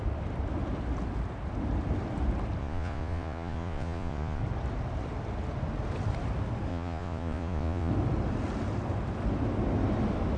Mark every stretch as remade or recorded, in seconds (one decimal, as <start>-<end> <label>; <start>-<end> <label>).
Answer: 0.0-2.6 recorded; 2.6-4.4 remade; 4.4-6.7 recorded; 6.7-7.9 remade; 7.9-10.4 recorded